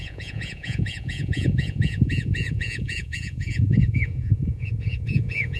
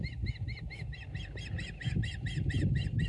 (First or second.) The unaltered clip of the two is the second